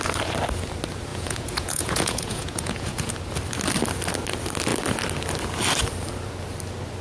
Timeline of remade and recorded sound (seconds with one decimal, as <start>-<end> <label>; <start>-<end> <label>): 0.0-1.1 recorded; 1.1-3.1 remade; 3.1-7.0 recorded